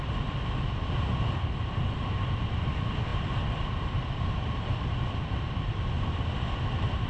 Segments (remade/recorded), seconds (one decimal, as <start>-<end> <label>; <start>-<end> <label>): 0.0-3.1 recorded; 3.1-5.8 remade; 5.8-7.1 recorded